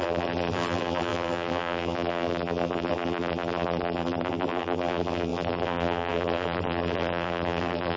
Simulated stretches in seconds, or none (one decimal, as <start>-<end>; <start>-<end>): 0.0-8.0